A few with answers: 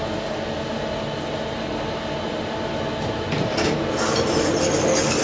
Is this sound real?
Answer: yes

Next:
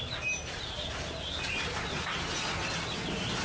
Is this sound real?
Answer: yes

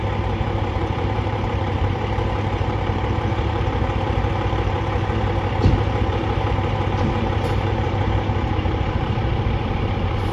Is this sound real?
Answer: no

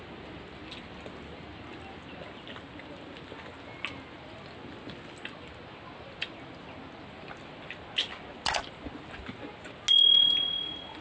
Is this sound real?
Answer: yes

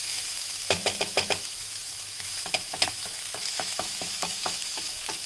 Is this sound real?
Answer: no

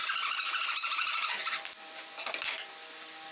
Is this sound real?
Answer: yes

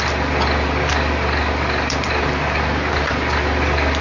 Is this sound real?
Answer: yes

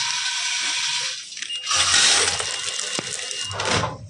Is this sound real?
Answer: yes